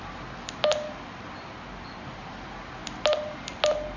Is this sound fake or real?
real